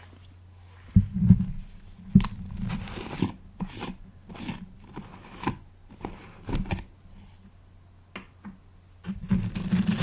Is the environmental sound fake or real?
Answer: real